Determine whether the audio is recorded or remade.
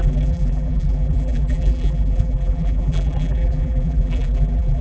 remade